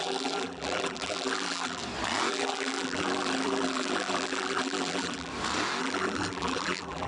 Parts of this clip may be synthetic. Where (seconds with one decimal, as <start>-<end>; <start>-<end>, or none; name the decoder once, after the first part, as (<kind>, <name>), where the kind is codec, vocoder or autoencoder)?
0.0-1.8 (vocoder, BigVGAN v2); 2.3-5.3; 5.8-7.1